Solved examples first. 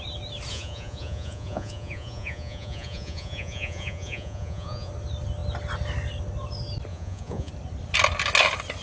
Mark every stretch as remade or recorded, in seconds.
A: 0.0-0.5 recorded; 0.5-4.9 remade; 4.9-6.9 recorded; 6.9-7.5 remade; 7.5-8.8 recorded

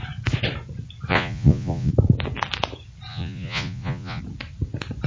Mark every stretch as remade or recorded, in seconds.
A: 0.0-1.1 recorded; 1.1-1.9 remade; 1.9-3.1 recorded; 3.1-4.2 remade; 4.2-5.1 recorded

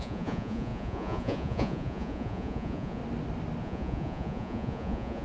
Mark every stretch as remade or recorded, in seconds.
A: 0.0-3.0 remade; 3.0-3.6 recorded; 3.6-5.2 remade